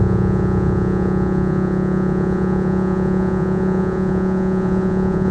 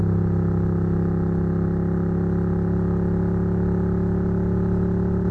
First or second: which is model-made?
first